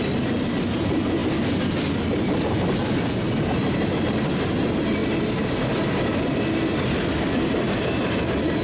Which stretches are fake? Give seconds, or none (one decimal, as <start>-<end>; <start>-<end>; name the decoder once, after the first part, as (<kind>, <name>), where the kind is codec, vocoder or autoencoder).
2.8-4.3 (vocoder, BigVGAN v2)